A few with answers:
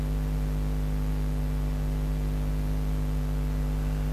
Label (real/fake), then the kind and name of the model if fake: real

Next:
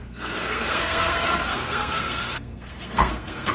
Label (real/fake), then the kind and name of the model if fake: fake, codec, SNAC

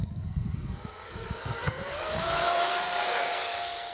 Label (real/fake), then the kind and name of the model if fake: fake, codec, SNAC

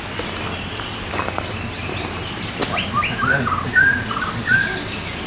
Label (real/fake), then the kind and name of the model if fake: real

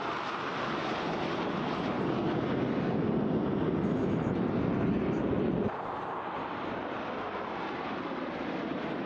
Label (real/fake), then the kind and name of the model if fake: real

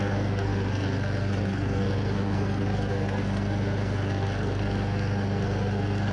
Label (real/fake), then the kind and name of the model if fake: fake, codec, SNAC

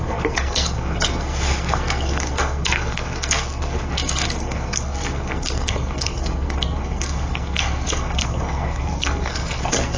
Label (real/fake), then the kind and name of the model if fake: fake, codec, SNAC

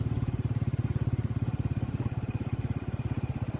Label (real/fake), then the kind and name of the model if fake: real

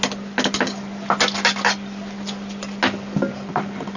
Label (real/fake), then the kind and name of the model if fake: real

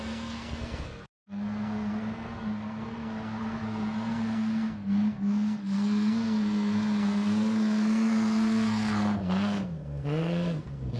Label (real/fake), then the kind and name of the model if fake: fake, codec, SNAC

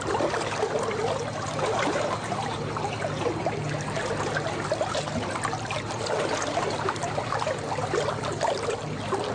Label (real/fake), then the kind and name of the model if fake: real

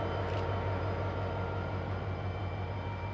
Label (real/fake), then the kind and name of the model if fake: real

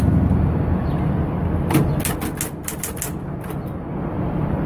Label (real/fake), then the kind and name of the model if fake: real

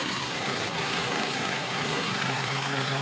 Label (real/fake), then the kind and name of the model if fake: fake, codec, SNAC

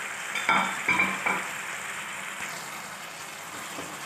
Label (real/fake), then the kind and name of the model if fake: real